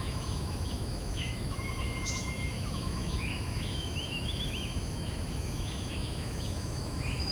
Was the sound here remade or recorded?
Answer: remade